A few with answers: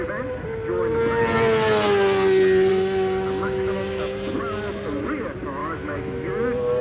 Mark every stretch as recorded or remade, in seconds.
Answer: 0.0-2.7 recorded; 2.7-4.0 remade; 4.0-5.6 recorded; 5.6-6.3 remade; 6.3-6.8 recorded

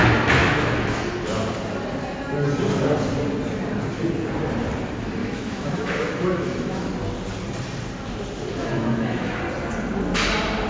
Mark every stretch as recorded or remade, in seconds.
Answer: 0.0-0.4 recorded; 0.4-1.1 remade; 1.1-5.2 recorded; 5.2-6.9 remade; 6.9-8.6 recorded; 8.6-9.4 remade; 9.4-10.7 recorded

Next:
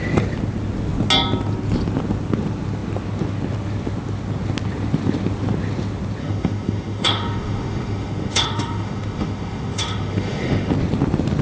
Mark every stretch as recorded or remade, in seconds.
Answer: 0.0-6.2 recorded; 6.2-10.7 remade; 10.7-11.4 recorded

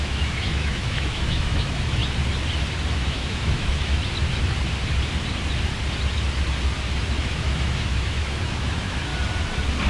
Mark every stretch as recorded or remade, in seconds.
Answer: 0.0-2.0 remade; 2.0-2.9 recorded; 2.9-4.0 remade; 4.0-7.2 recorded; 7.2-9.1 remade; 9.1-9.9 recorded